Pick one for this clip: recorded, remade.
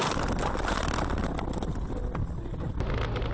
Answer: recorded